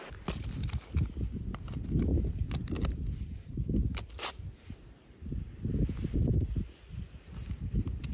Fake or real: real